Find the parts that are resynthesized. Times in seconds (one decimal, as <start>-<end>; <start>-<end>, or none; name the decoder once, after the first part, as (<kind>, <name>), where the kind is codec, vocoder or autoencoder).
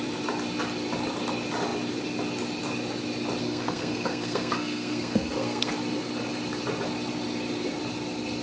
3.4-5.7 (codec, SNAC)